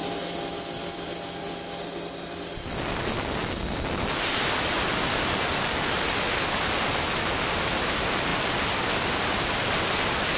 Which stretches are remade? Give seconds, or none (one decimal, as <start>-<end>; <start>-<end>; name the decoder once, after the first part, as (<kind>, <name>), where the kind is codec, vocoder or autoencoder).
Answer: none